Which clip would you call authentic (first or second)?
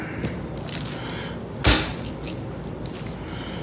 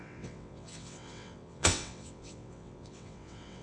first